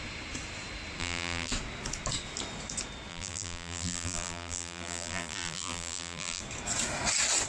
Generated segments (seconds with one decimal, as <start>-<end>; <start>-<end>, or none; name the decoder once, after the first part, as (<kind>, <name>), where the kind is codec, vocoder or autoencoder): 1.0-1.5 (vocoder, BigVGAN v2); 3.1-6.4